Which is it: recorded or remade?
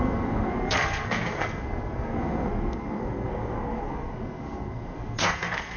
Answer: remade